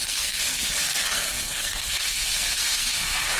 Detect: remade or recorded remade